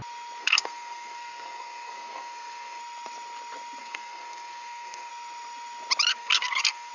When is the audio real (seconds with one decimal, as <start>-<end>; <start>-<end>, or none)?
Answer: 0.0-0.4; 2.8-3.8; 5.1-6.1